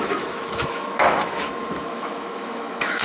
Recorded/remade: remade